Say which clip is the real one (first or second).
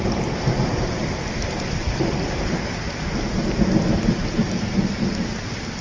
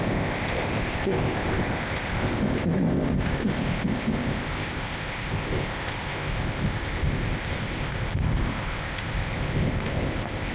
first